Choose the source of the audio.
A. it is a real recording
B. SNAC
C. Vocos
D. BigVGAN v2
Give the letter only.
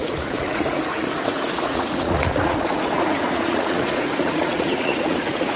C